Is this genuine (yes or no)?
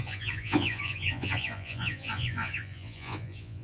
no